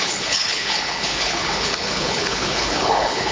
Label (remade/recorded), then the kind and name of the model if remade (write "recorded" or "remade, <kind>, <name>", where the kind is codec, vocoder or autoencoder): remade, codec, HILCodec